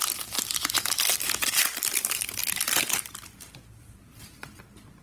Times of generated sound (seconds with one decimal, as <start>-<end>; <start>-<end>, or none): 2.4-4.6